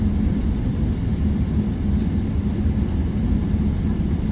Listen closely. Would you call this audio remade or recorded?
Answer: recorded